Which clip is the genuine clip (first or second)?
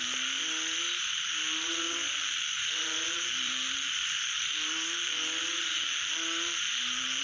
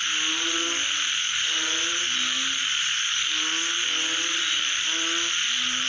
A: second